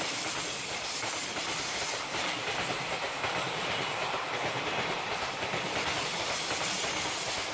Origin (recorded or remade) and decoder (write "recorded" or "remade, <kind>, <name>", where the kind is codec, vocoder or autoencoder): remade, vocoder, BigVGAN v2